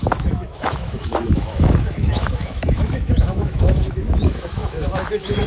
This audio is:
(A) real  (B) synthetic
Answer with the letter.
B